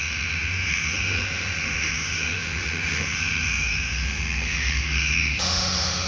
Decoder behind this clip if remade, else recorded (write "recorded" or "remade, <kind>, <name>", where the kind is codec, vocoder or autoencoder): remade, autoencoder, DAC-VAE